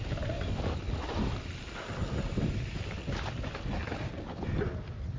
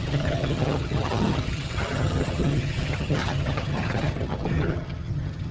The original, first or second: first